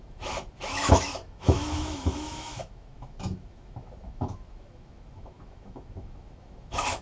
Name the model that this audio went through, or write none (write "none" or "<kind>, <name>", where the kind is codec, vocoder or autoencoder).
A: autoencoder, DAC-VAE